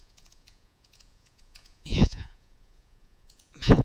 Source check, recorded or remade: remade